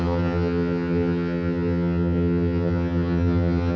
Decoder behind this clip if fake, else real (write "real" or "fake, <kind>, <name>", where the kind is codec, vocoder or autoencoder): fake, vocoder, HiFi-GAN